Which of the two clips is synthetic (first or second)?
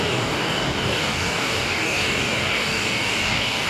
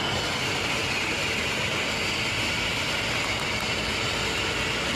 first